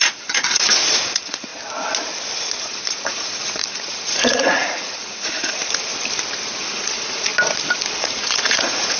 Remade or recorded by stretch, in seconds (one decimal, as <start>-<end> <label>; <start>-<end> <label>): 0.0-1.5 remade; 1.5-2.6 recorded; 2.6-5.9 remade; 5.9-6.6 recorded; 6.6-7.3 remade; 7.3-8.0 recorded; 8.0-9.0 remade